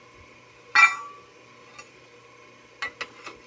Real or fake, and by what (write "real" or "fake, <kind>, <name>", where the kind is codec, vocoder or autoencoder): real